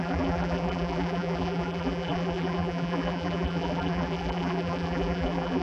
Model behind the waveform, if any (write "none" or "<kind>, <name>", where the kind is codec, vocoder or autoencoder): vocoder, BigVGAN v2